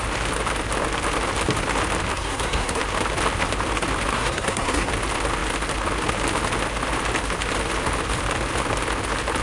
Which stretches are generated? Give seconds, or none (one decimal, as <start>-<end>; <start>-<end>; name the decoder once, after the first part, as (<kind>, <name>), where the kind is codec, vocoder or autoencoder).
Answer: 2.1-2.8 (codec, SNAC); 4.1-4.9